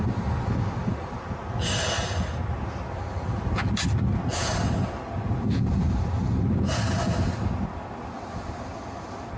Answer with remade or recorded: recorded